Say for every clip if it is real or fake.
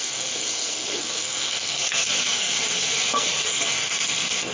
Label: fake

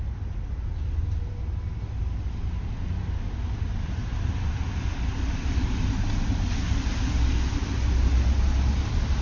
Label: real